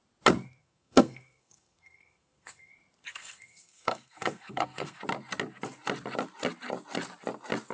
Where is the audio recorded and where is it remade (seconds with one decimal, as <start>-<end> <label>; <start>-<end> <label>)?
0.0-0.6 recorded; 0.6-2.7 remade; 2.7-3.1 recorded; 3.1-5.0 remade; 5.0-7.7 recorded